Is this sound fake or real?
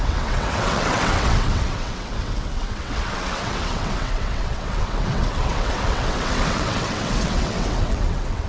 fake